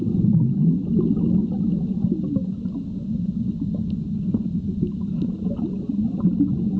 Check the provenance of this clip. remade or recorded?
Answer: recorded